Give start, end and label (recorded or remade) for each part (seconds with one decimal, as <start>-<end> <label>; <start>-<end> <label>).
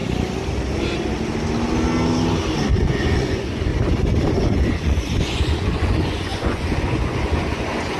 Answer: 0.0-2.8 recorded; 2.8-3.7 remade; 3.7-4.3 recorded; 4.3-8.0 remade